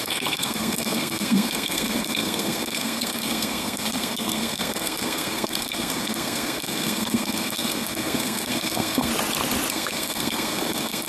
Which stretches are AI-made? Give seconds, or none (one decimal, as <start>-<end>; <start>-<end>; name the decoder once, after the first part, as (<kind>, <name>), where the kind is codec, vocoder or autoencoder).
0.0-9.1 (codec, SNAC); 9.7-11.1